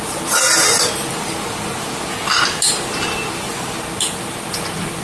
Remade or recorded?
recorded